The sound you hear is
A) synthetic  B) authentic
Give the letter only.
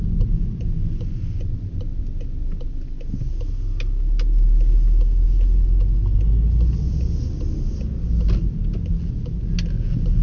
B